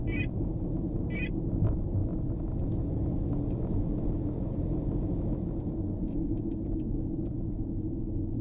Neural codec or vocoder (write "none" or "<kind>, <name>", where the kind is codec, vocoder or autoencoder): none